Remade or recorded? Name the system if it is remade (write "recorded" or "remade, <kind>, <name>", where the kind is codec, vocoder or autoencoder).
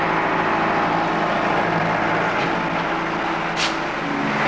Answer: recorded